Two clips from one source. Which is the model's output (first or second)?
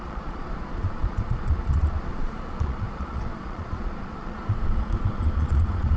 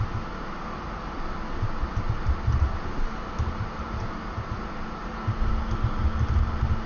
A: first